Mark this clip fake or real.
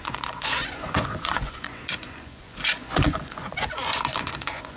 fake